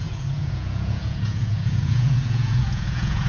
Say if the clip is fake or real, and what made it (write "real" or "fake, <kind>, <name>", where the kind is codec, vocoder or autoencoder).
fake, vocoder, Vocos